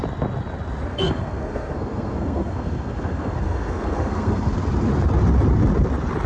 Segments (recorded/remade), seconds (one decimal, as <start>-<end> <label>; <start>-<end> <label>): 0.0-0.9 recorded; 0.9-4.5 remade; 4.5-6.3 recorded